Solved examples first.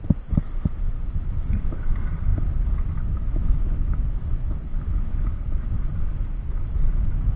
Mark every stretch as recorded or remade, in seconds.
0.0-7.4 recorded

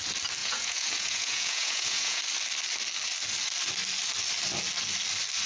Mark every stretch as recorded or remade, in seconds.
0.0-0.4 recorded; 0.4-2.2 remade; 2.2-5.5 recorded

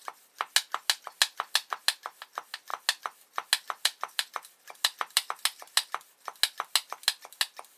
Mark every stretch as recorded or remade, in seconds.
0.0-7.8 recorded

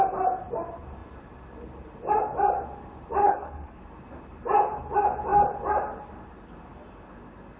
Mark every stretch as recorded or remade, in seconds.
0.0-3.2 recorded; 3.2-3.8 remade; 3.8-7.6 recorded

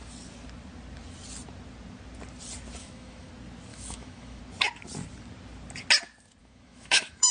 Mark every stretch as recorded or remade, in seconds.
0.0-2.8 recorded; 2.8-3.3 remade; 3.3-3.7 recorded; 3.7-4.4 remade; 4.4-6.4 recorded; 6.4-7.3 remade

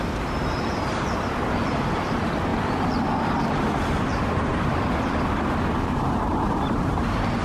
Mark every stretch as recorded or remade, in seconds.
0.0-7.4 recorded

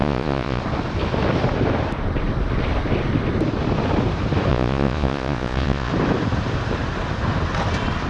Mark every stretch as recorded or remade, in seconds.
0.0-0.6 remade; 0.6-4.5 recorded; 4.5-5.9 remade; 5.9-8.1 recorded